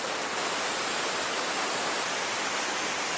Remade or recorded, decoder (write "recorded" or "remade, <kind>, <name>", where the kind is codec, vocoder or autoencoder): recorded